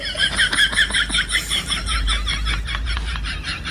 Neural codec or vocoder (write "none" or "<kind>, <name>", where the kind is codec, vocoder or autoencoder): vocoder, BigVGAN v2